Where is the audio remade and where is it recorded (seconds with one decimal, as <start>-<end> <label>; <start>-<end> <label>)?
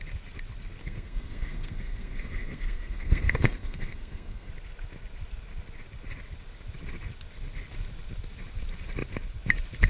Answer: 0.0-0.8 recorded; 0.8-4.5 remade; 4.5-9.9 recorded